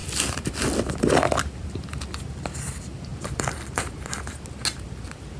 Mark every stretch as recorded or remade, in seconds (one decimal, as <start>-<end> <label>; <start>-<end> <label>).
0.0-3.1 recorded; 3.1-3.7 remade; 3.7-5.4 recorded